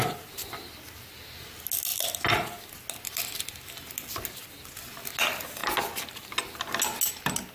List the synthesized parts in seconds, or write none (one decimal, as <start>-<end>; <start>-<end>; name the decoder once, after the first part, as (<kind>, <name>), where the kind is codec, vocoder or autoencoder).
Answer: none